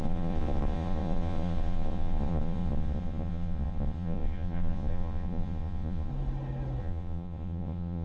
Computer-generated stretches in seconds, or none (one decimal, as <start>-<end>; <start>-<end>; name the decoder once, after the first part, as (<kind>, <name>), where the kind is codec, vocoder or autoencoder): 0.0-6.1 (vocoder, Vocos); 6.8-8.0